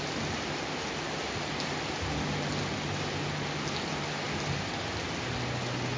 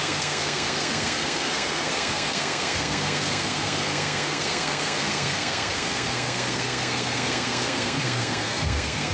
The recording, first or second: first